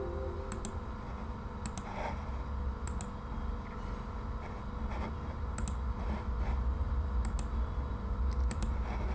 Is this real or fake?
real